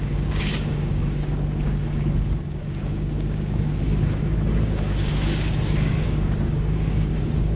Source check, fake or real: fake